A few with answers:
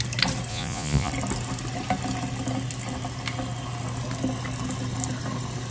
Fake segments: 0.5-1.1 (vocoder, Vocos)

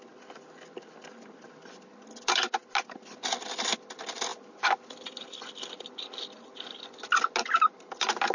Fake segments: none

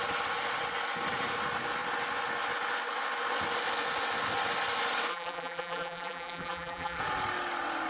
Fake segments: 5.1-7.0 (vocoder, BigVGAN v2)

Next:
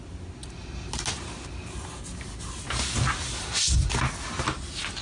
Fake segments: none

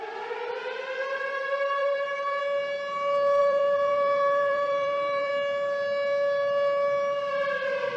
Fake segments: 1.8-2.4 (vocoder, BigVGAN v2); 3.4-5.3

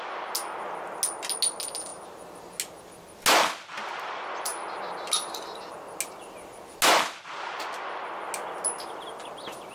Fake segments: none